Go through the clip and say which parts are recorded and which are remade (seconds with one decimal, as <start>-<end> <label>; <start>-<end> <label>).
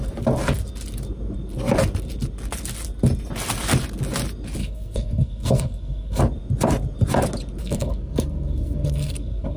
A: 0.0-4.6 recorded; 4.6-6.2 remade; 6.2-7.6 recorded; 7.6-9.6 remade